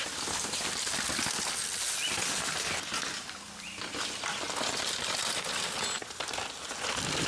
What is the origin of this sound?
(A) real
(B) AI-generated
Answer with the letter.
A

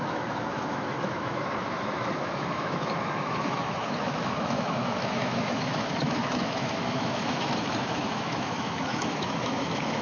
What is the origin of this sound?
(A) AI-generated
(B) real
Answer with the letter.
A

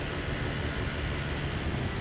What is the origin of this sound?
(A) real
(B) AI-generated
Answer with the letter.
A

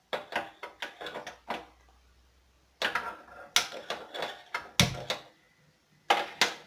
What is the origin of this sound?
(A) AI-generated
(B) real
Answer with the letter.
B